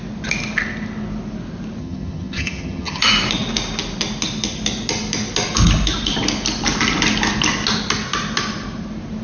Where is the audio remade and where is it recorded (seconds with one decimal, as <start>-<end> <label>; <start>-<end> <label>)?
0.0-1.8 recorded; 1.8-3.0 remade; 3.0-9.2 recorded

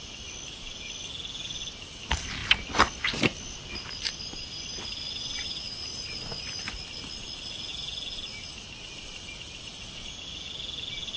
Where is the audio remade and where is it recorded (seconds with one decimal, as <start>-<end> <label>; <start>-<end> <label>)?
0.0-11.2 recorded

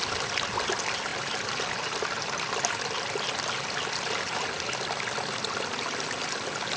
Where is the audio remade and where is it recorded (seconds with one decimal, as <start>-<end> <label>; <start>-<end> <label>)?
0.0-6.8 recorded

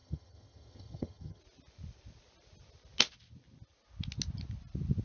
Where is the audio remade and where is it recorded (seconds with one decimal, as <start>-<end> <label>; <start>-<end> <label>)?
0.0-1.4 remade; 1.4-5.0 recorded

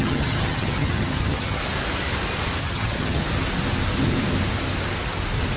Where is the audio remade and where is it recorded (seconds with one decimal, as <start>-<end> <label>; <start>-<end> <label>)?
0.0-1.6 remade; 1.6-2.6 recorded; 2.6-3.2 remade; 3.2-5.6 recorded

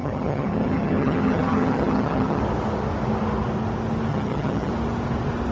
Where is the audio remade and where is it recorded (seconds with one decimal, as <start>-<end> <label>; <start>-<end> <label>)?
0.0-2.4 remade; 2.4-4.1 recorded; 4.1-4.7 remade; 4.7-5.5 recorded

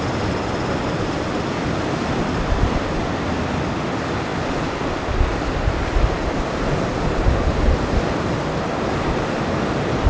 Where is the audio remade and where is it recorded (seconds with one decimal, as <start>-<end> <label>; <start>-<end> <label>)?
0.0-10.1 recorded

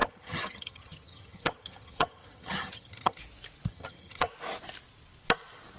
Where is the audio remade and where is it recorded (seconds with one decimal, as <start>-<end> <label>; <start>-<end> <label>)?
0.0-3.2 remade; 3.2-3.7 recorded; 3.7-4.3 remade; 4.3-5.8 recorded